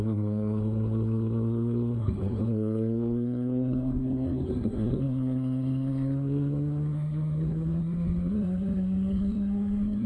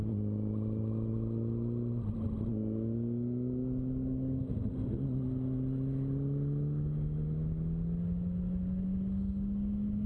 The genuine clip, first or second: second